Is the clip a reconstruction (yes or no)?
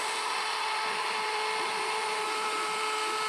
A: no